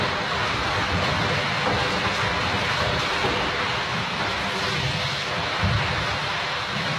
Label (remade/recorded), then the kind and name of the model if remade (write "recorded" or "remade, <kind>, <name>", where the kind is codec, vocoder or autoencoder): recorded